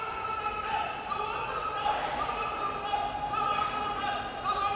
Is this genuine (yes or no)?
yes